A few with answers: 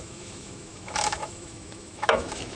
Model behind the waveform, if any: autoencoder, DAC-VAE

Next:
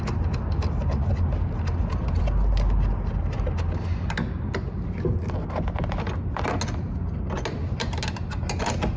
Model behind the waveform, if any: none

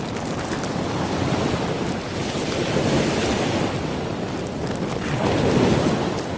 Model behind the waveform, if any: none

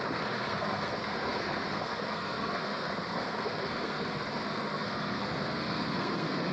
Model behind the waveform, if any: codec, SNAC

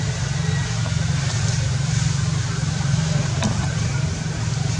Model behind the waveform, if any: none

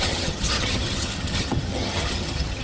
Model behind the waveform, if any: vocoder, HiFi-GAN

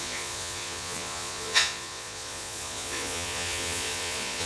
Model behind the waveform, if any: vocoder, Vocos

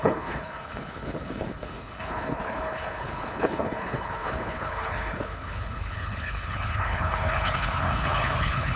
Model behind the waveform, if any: codec, HILCodec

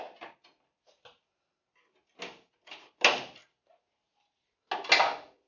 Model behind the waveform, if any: none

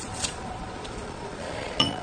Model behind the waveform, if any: vocoder, Vocos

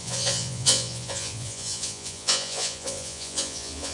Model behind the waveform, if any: vocoder, Vocos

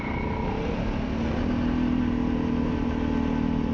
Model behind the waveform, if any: none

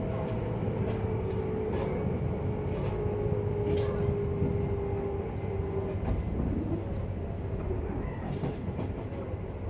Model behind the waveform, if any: none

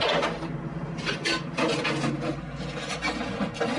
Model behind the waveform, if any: none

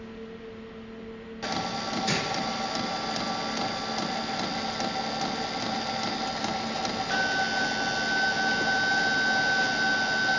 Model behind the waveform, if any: none